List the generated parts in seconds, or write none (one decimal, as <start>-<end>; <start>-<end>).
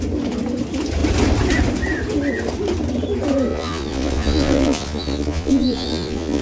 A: 3.5-6.4